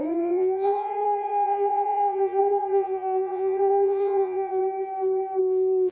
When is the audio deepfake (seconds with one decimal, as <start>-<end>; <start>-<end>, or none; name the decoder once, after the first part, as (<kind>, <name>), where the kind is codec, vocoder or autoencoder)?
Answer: 0.0-4.6 (vocoder, Vocos); 5.4-5.9